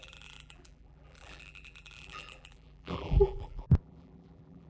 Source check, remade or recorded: remade